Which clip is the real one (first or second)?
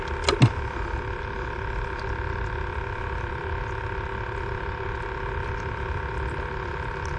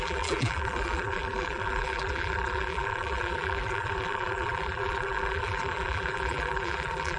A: first